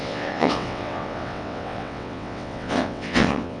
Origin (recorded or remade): remade